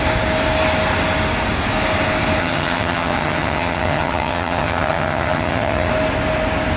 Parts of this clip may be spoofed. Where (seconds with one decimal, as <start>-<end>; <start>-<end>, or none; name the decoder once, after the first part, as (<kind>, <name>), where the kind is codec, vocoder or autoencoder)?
2.4-5.9 (vocoder, HiFi-GAN)